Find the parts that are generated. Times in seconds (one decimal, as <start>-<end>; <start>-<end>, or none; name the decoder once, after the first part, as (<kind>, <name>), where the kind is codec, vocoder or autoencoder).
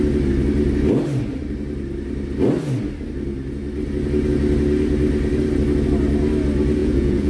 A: 6.8-7.3 (vocoder, Vocos)